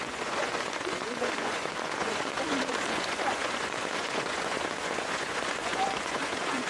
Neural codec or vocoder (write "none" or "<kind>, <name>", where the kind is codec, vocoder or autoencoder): vocoder, Vocos